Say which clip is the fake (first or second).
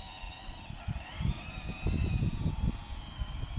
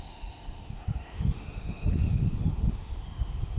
second